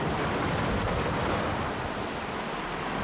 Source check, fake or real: real